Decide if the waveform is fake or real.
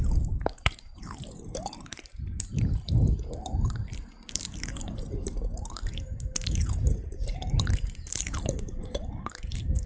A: fake